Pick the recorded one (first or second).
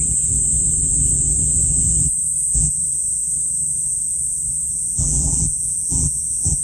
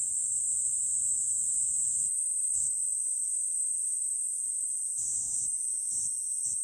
second